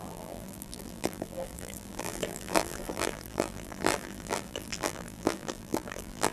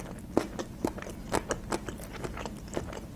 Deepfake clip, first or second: first